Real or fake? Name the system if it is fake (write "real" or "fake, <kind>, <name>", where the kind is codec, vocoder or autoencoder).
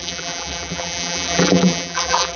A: fake, vocoder, BigVGAN v2